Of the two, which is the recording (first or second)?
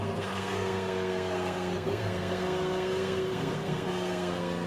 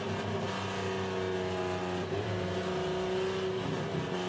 second